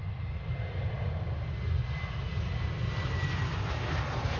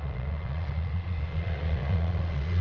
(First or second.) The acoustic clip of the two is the first